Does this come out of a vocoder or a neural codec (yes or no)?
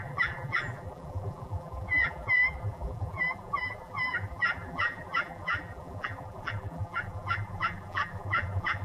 yes